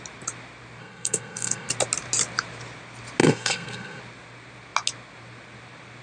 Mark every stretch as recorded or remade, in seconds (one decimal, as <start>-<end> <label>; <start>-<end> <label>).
0.0-0.8 recorded; 0.8-1.7 remade; 1.7-3.2 recorded; 3.2-4.0 remade; 4.0-6.0 recorded